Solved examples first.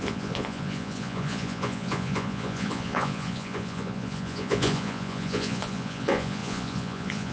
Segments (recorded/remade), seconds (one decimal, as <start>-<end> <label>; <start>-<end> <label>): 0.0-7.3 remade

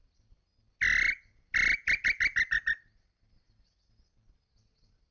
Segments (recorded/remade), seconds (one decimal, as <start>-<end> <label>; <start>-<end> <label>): 0.0-5.1 recorded

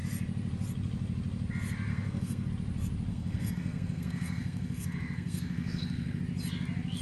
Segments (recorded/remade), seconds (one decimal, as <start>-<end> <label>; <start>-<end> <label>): 0.0-1.9 recorded; 1.9-2.5 remade; 2.5-3.1 recorded; 3.1-6.2 remade; 6.2-7.0 recorded

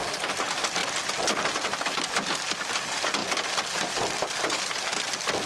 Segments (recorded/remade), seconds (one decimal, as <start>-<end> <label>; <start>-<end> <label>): 0.0-5.5 recorded

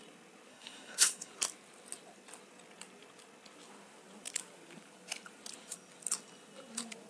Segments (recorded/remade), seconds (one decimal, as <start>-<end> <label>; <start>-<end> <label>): 0.0-0.5 recorded; 0.5-1.3 remade; 1.3-7.1 recorded